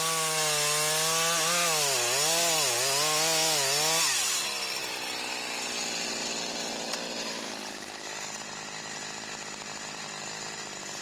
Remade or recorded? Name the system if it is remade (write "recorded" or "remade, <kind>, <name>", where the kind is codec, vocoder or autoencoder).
recorded